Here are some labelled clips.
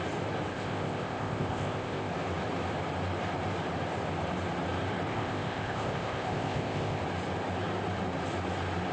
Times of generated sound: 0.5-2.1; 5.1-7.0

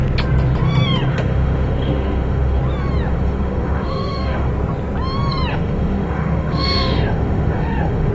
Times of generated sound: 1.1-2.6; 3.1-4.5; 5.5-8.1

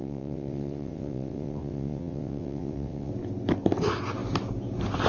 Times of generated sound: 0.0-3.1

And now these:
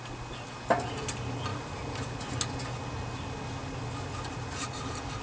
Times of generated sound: 1.5-2.4; 3.6-5.2

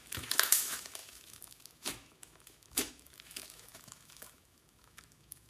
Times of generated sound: 0.0-5.5

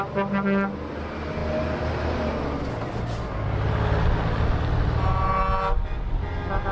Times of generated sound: none

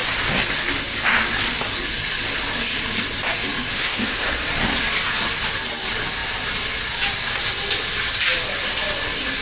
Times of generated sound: 3.7-4.3

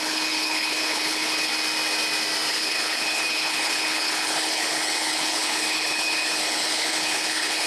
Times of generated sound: 0.0-1.5; 2.5-7.7